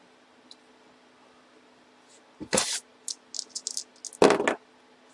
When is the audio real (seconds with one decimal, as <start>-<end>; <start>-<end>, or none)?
0.0-5.1